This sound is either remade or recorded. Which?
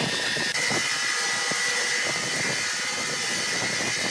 recorded